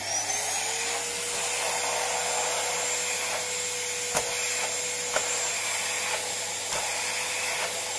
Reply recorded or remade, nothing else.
recorded